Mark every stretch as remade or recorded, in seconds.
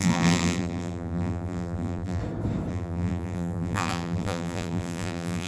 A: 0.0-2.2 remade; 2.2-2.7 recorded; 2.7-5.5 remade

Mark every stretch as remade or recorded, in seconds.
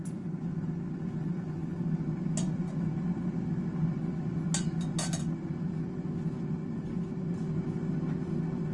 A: 0.0-8.7 recorded